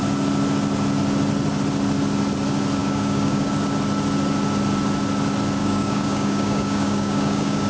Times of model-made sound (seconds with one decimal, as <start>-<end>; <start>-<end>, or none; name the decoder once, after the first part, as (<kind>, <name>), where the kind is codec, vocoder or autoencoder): 2.8-3.5 (codec, DAC); 5.6-7.7